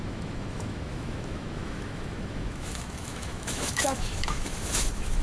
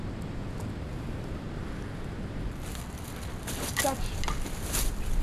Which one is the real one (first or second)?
second